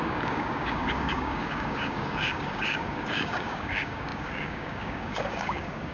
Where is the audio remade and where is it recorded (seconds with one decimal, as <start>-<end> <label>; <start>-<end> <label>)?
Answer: 0.0-5.9 remade